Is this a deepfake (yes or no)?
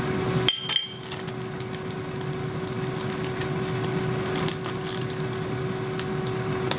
no